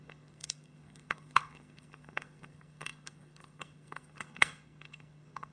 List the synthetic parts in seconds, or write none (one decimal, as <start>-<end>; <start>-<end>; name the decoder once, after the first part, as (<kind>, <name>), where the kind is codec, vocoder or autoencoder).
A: 0.0-5.5 (codec, SNAC)